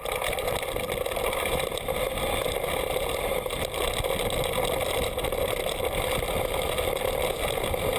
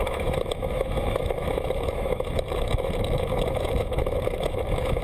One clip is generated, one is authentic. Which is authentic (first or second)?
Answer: first